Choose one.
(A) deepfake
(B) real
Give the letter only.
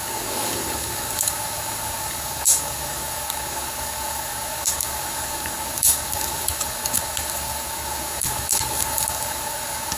A